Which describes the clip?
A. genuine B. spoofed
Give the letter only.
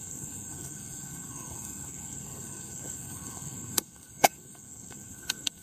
B